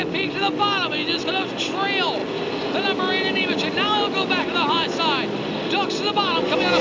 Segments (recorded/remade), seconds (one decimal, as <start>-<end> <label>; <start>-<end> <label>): 0.0-6.8 recorded